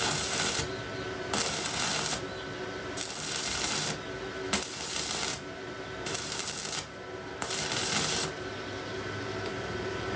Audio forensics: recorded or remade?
remade